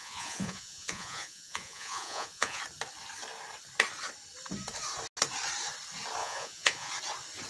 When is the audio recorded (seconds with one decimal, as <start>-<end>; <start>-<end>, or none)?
2.6-6.2; 6.9-7.5